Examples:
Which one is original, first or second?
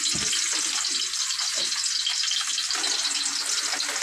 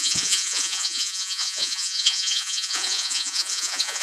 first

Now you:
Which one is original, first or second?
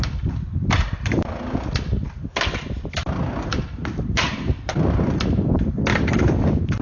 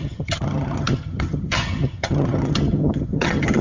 first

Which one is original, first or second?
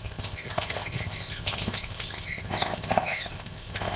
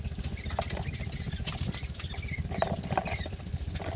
second